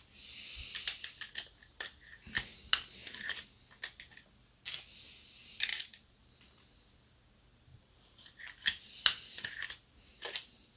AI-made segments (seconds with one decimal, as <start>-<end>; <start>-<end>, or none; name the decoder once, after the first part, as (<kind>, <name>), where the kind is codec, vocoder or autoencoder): 5.7-6.3 (vocoder, BigVGAN v2); 7.7-8.8; 10.1-10.8